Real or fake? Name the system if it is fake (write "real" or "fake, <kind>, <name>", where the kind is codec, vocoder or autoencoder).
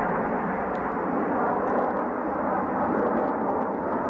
real